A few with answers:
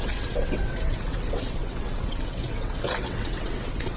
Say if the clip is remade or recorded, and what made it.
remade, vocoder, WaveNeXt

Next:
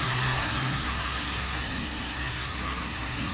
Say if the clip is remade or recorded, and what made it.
remade, codec, SNAC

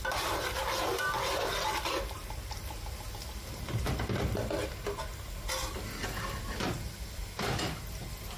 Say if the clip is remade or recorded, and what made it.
recorded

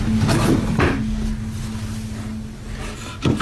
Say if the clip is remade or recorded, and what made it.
recorded